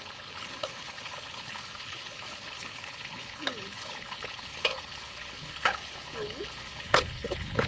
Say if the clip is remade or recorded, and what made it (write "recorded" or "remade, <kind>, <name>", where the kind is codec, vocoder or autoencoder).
remade, codec, HILCodec